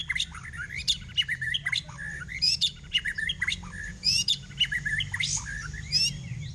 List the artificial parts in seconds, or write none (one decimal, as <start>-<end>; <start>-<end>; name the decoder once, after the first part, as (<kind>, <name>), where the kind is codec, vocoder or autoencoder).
2.3-3.2 (vocoder, Vocos); 3.9-4.5